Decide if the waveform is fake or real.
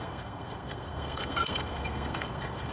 fake